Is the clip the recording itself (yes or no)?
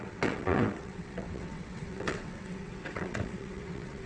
no